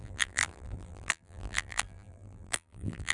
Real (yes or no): no